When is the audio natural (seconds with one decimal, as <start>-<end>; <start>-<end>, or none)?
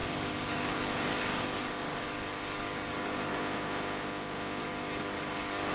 3.4-4.6